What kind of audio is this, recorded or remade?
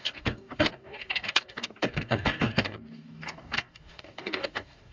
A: remade